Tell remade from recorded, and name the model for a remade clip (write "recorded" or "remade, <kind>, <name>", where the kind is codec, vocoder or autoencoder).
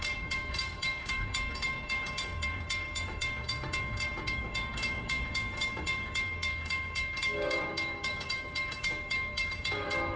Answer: remade, codec, DAC